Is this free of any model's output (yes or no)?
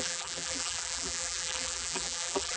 no